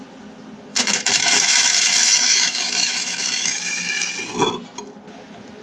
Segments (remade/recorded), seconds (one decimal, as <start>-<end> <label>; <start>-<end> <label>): 0.0-0.7 recorded; 0.7-4.1 remade; 4.1-5.6 recorded